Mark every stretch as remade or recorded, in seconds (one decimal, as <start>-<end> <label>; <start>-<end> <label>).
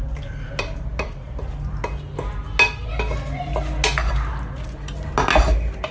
0.0-5.9 recorded